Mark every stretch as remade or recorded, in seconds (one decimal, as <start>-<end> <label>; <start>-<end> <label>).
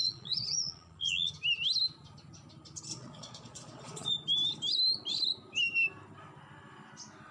0.0-1.3 remade; 1.3-2.9 recorded; 2.9-4.1 remade; 4.1-7.3 recorded